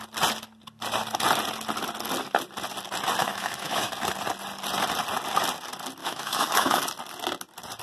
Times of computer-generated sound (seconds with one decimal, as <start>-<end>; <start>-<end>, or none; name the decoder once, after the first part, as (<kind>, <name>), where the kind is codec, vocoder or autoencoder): 3.2-3.9 (autoencoder, DAC-VAE); 6.0-6.8